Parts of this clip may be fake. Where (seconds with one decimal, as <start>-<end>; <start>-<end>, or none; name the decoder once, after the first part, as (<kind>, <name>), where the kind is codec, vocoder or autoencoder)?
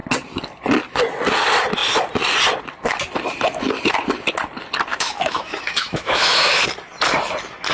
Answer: 4.9-6.6 (autoencoder, DAC-VAE)